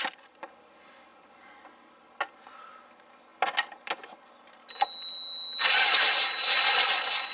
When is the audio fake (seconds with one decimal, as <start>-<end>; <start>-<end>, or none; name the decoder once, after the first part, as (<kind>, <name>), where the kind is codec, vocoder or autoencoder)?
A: none

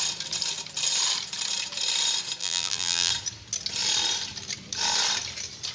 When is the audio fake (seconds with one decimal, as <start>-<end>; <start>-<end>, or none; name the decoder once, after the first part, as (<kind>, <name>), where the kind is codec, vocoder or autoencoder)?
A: 2.4-3.1 (vocoder, BigVGAN v2)

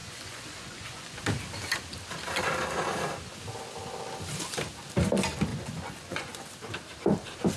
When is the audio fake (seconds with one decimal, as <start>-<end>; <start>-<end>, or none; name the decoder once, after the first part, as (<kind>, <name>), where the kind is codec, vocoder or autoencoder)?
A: 0.0-1.2 (vocoder, Vocos); 5.5-6.3

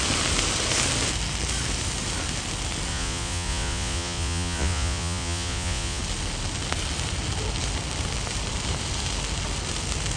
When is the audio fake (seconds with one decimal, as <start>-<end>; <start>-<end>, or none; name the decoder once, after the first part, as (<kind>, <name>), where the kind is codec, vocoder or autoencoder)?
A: 2.9-6.0 (vocoder, Vocos)

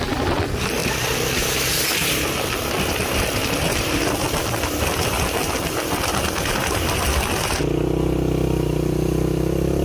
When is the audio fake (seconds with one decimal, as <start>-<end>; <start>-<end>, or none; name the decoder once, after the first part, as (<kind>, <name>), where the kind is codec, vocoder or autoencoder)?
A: 0.8-1.7 (vocoder, BigVGAN v2); 3.4-7.0

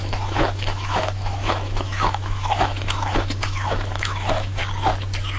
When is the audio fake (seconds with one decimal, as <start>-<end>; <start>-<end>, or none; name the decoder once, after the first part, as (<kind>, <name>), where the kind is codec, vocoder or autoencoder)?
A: 0.0-4.6 (autoencoder, DAC-VAE)